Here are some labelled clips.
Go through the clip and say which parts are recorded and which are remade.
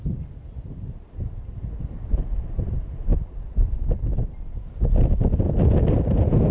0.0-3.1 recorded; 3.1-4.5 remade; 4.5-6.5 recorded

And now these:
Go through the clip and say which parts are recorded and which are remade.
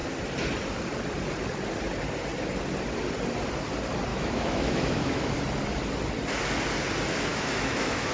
0.0-4.1 recorded; 4.1-5.3 remade; 5.3-7.3 recorded; 7.3-8.1 remade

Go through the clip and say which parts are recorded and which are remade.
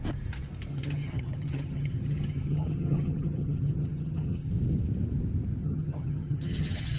0.0-0.7 recorded; 0.7-4.5 remade; 4.5-5.6 recorded; 5.6-7.0 remade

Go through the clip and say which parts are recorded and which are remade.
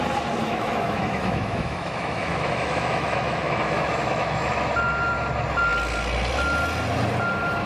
0.0-0.4 recorded; 0.4-4.7 remade; 4.7-7.7 recorded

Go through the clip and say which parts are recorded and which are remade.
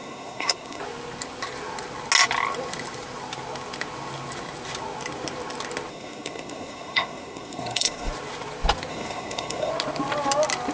0.0-0.8 remade; 0.8-5.9 recorded; 5.9-8.1 remade; 8.1-8.9 recorded; 8.9-9.7 remade; 9.7-10.7 recorded